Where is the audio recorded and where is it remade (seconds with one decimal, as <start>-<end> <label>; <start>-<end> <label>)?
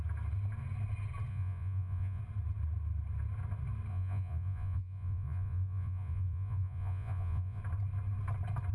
0.0-1.3 recorded; 1.3-2.2 remade; 2.2-3.9 recorded; 3.9-7.6 remade; 7.6-8.7 recorded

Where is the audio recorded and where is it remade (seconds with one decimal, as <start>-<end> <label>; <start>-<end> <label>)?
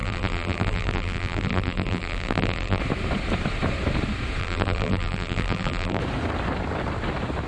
0.0-2.8 remade; 2.8-4.4 recorded; 4.4-6.0 remade; 6.0-7.5 recorded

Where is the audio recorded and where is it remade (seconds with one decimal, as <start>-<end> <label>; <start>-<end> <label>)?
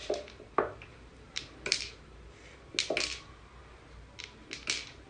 0.0-2.2 remade; 2.2-3.6 recorded; 3.6-4.2 remade; 4.2-5.1 recorded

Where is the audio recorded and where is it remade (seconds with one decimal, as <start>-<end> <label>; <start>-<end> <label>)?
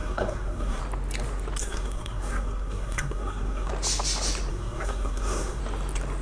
0.0-0.8 remade; 0.8-1.6 recorded; 1.6-3.7 remade; 3.7-4.5 recorded; 4.5-5.6 remade; 5.6-6.2 recorded